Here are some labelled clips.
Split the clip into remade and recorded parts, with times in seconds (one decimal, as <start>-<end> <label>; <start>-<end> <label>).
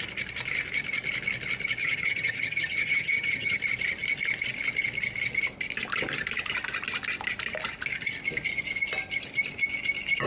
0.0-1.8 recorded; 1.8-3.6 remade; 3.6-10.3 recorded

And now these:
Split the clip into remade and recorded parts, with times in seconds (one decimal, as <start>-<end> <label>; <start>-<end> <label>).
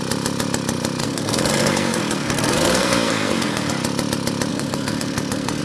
0.0-1.0 recorded; 1.0-3.7 remade; 3.7-4.5 recorded; 4.5-5.6 remade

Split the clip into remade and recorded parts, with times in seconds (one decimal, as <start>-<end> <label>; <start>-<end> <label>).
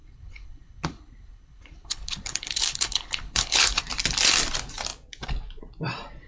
0.0-3.8 remade; 3.8-6.3 recorded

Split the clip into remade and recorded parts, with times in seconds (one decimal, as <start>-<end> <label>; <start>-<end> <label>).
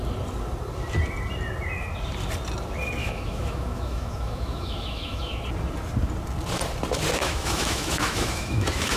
0.0-3.0 recorded; 3.0-5.3 remade; 5.3-7.2 recorded; 7.2-9.0 remade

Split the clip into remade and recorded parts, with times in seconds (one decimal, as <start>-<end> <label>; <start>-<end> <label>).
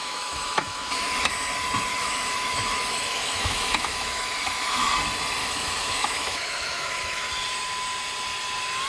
0.0-1.3 remade; 1.3-1.9 recorded; 1.9-4.9 remade; 4.9-5.4 recorded; 5.4-7.3 remade; 7.3-8.9 recorded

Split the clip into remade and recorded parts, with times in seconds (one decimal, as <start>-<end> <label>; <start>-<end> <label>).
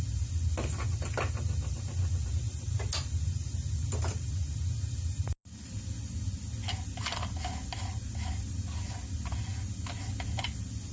0.0-10.9 recorded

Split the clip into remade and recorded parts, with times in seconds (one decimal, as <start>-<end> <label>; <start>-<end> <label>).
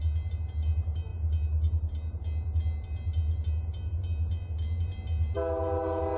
0.0-6.2 recorded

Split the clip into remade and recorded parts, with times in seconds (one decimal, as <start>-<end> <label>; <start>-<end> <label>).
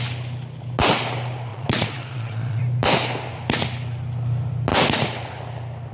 0.0-1.5 recorded; 1.5-2.6 remade; 2.6-5.9 recorded